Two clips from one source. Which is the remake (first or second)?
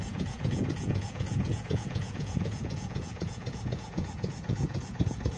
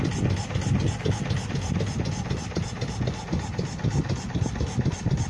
first